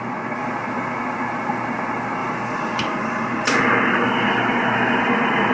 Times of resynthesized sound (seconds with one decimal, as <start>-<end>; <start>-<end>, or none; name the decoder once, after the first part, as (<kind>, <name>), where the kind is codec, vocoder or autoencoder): 2.2-5.5 (vocoder, BigVGAN v2)